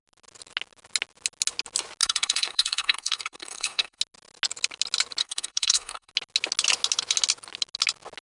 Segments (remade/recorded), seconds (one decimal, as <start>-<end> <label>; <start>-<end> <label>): 0.0-2.0 recorded; 2.0-4.0 remade; 4.0-5.2 recorded; 5.2-6.1 remade; 6.1-8.3 recorded